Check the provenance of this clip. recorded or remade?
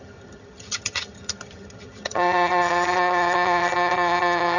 remade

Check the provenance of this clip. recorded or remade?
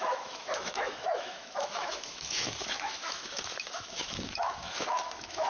remade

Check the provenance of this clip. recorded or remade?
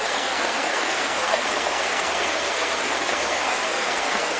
remade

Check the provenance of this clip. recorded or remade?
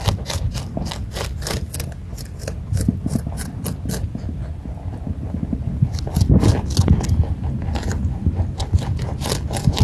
recorded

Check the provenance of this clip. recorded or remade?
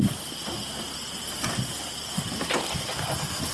recorded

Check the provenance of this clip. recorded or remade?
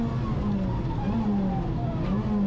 recorded